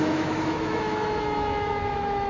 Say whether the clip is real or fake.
fake